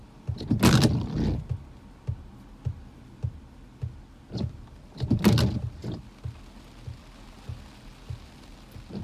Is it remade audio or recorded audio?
recorded